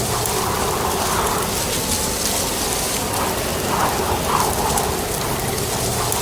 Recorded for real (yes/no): yes